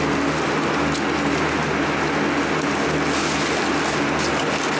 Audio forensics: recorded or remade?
recorded